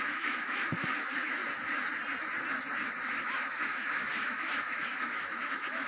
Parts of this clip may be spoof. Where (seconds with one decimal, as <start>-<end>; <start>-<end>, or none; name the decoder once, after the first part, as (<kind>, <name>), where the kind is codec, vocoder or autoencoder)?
0.0-1.4 (autoencoder, DAC-VAE); 3.2-5.9